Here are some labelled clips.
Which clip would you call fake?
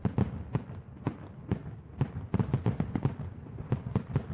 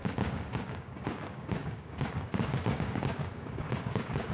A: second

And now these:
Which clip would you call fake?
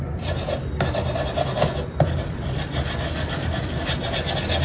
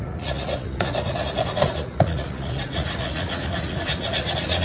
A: second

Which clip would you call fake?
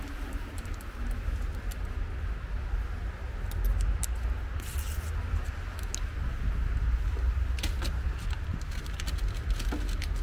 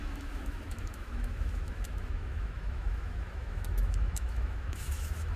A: second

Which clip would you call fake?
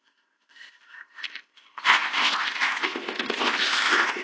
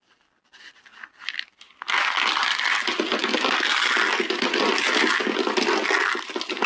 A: first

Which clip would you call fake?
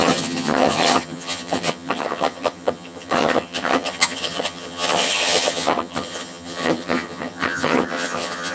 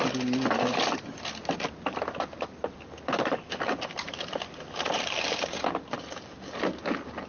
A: first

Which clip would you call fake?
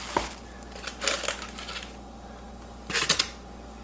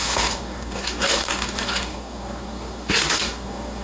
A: second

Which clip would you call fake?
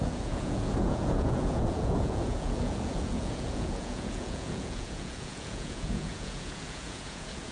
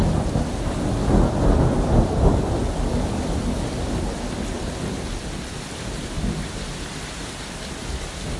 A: first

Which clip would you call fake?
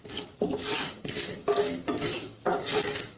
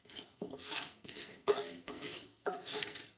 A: second